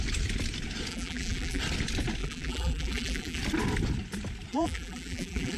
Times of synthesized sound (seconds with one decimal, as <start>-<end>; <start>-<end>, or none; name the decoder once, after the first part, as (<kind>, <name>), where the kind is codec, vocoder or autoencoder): 0.9-1.6 (vocoder, BigVGAN v2); 2.2-3.4; 4.5-5.6